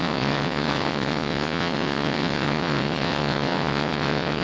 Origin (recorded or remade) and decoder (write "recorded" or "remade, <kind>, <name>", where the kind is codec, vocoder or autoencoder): remade, vocoder, WaveNeXt